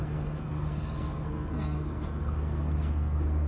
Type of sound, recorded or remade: remade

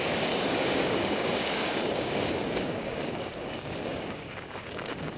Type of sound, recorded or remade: remade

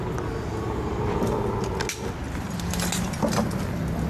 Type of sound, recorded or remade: recorded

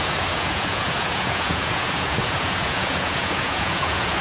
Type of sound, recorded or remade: remade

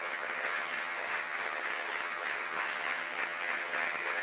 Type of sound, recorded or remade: remade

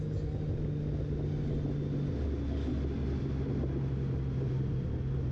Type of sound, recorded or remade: recorded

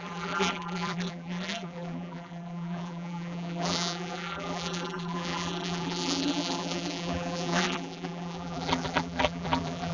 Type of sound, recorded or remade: remade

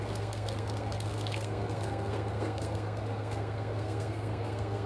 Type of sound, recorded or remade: remade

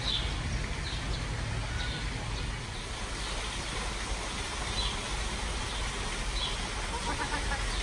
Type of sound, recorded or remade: recorded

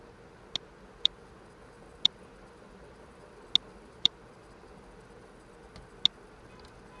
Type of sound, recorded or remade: recorded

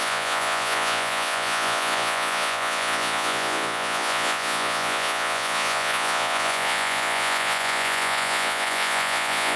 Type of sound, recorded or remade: remade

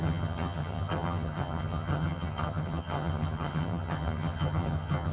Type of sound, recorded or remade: remade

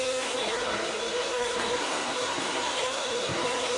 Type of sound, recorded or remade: remade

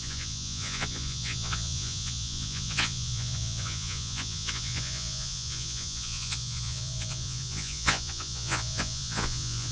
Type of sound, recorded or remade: remade